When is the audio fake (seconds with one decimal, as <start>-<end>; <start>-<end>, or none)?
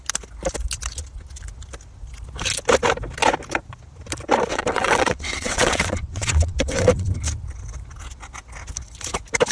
4.5-7.1